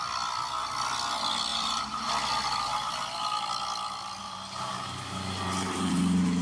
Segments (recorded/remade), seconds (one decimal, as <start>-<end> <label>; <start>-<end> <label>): 0.0-1.5 recorded; 1.5-2.1 remade; 2.1-4.2 recorded; 4.2-6.0 remade; 6.0-6.4 recorded